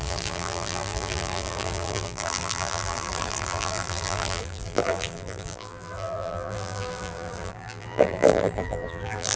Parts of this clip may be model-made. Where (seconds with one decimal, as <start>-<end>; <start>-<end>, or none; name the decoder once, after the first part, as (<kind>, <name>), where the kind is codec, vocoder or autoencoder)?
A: 0.0-9.4 (vocoder, BigVGAN v2)